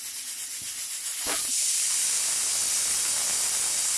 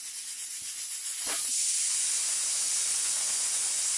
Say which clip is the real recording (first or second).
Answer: first